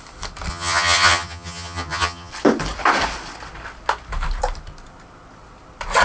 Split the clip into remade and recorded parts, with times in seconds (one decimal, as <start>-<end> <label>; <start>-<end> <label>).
0.0-0.5 recorded; 0.5-2.3 remade; 2.3-6.0 recorded